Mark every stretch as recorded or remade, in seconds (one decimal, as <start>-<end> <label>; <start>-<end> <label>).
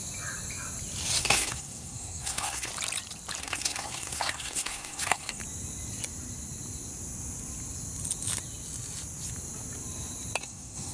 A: 0.0-1.2 recorded; 1.2-2.7 remade; 2.7-3.4 recorded; 3.4-5.4 remade; 5.4-10.4 recorded; 10.4-10.9 remade